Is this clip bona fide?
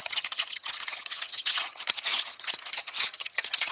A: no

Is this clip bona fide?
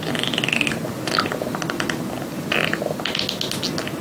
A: yes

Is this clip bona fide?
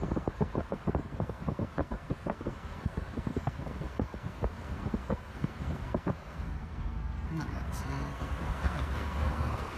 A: no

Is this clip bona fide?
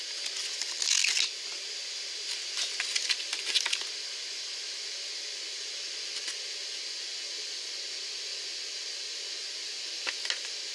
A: yes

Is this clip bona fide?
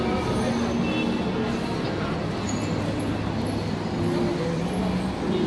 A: yes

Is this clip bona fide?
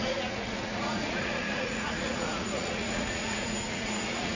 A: no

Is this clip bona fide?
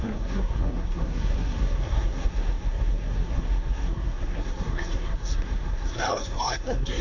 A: no